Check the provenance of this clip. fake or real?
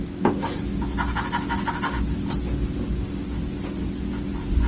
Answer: real